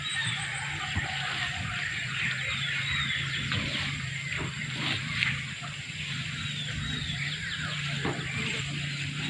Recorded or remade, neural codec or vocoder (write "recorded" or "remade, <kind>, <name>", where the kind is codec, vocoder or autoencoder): recorded